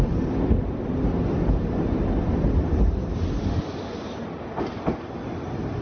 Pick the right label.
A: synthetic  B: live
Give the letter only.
B